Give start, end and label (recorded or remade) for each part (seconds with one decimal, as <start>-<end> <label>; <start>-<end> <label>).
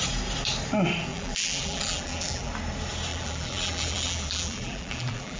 0.0-1.1 recorded; 1.1-2.5 remade; 2.5-3.1 recorded; 3.1-5.4 remade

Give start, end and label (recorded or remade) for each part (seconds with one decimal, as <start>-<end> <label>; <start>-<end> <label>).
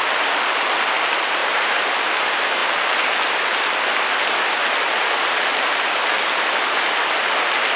0.0-1.4 recorded; 1.4-1.9 remade; 1.9-7.8 recorded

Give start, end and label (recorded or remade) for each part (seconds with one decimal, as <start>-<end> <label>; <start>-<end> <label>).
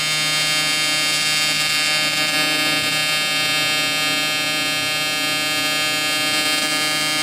0.0-7.2 recorded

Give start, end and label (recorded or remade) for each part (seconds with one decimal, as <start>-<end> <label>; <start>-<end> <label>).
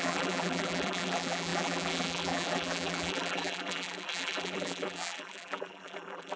0.0-6.4 remade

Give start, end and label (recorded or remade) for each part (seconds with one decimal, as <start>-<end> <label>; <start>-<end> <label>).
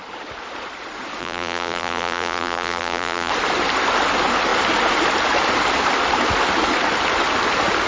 0.0-1.2 recorded; 1.2-3.3 remade; 3.3-7.9 recorded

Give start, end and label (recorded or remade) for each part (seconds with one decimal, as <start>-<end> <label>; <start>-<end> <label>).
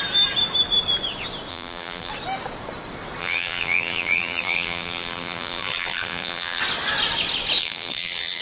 0.0-1.5 recorded; 1.5-2.1 remade; 2.1-3.2 recorded; 3.2-6.6 remade; 6.6-7.6 recorded; 7.6-8.4 remade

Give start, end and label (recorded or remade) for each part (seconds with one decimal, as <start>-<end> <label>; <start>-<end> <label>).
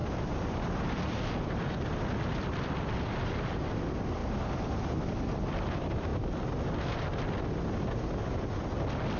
0.0-4.2 remade; 4.2-5.5 recorded; 5.5-6.1 remade; 6.1-9.2 recorded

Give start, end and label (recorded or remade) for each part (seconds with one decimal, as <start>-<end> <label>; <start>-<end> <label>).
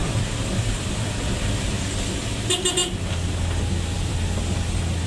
0.0-2.2 remade; 2.2-5.1 recorded